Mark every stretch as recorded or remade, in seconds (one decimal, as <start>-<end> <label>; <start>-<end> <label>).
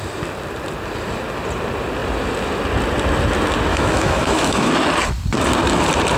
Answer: 0.0-3.7 recorded; 3.7-4.7 remade; 4.7-6.2 recorded